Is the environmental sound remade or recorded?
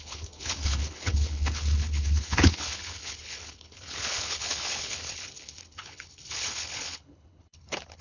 remade